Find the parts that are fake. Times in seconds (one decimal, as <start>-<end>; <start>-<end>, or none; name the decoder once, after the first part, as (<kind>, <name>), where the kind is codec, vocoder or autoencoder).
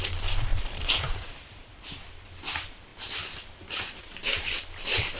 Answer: 0.5-2.0 (vocoder, BigVGAN v2)